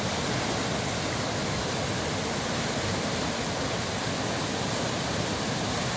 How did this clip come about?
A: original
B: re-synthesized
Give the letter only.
A